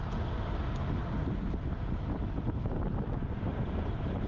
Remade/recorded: recorded